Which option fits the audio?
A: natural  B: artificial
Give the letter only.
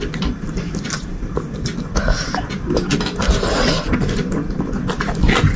A